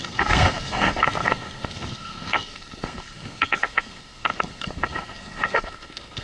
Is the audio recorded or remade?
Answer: remade